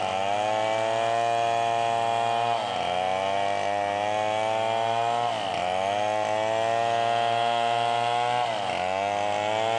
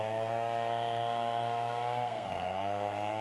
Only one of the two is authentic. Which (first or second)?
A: first